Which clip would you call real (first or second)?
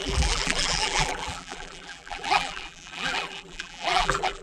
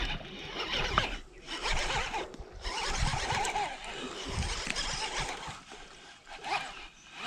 second